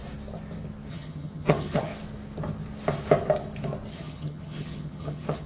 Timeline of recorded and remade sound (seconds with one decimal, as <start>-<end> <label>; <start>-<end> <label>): 0.0-0.9 recorded; 0.9-1.9 remade; 1.9-3.9 recorded; 3.9-5.5 remade